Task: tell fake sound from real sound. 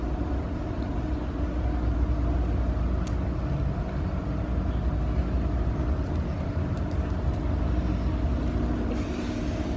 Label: real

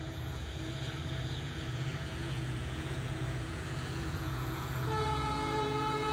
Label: fake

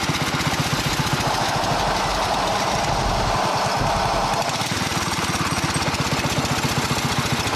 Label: real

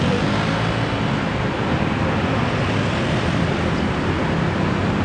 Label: real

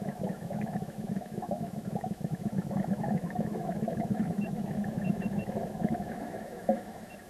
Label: fake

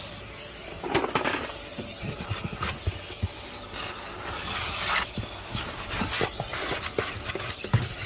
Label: real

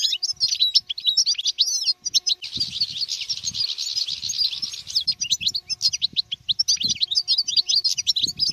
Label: real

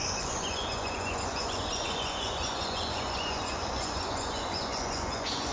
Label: fake